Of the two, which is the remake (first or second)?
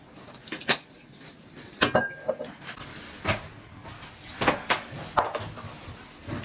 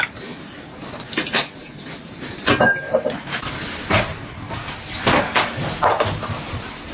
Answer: second